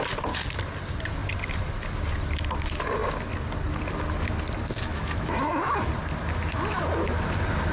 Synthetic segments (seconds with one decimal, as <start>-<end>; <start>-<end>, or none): 4.9-5.9